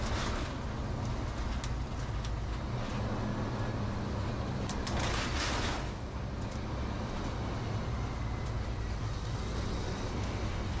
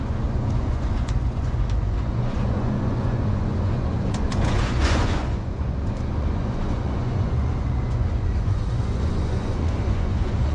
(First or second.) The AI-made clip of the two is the second